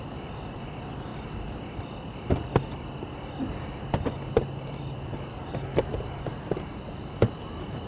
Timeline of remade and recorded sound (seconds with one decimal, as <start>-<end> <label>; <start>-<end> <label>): 0.0-1.1 remade; 1.1-3.4 recorded; 3.4-7.9 remade